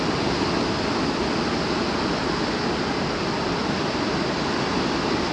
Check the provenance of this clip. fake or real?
real